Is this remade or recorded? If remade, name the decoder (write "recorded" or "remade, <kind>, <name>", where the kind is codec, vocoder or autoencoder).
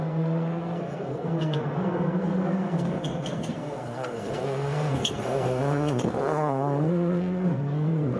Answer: remade, codec, SNAC